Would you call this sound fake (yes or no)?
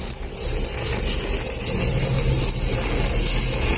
no